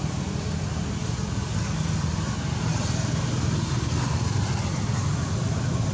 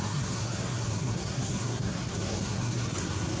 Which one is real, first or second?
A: first